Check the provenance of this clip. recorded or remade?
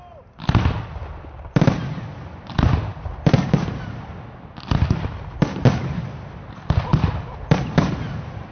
recorded